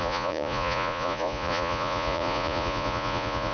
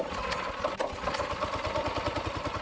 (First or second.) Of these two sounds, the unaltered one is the second